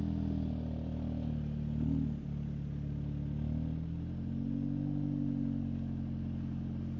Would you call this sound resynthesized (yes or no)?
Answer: no